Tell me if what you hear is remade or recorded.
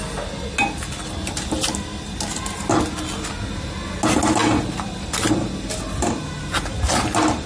recorded